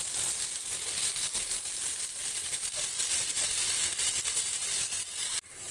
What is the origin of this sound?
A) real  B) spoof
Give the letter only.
A